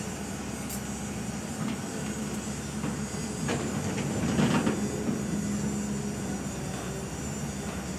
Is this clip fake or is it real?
real